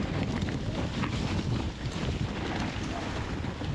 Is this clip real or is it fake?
real